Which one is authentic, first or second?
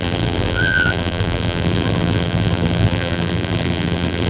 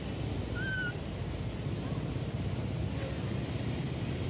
second